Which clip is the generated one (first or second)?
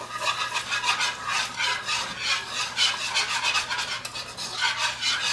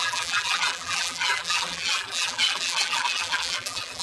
second